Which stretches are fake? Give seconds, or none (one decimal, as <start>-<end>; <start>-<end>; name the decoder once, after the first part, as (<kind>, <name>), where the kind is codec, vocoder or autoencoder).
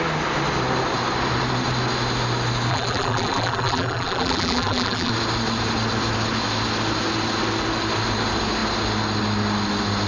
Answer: 2.7-5.1 (vocoder, BigVGAN v2)